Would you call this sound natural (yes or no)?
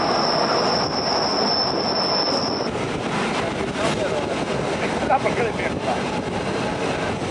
yes